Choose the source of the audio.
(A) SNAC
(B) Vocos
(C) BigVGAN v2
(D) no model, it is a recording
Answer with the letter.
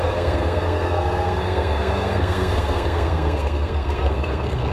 A